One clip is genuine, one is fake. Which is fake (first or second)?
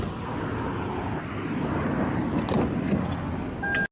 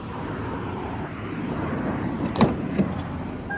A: second